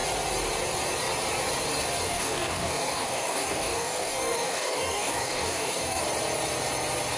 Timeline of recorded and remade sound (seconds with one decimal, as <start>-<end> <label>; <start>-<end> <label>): 0.0-2.0 recorded; 2.0-6.0 remade; 6.0-7.2 recorded